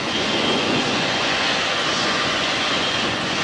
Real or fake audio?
fake